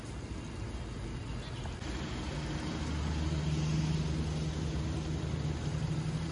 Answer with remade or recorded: recorded